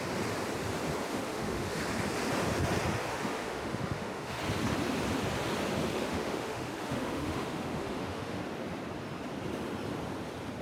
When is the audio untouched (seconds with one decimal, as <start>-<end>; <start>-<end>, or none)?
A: 0.0-1.0; 1.8-3.0; 4.4-5.9; 8.4-10.6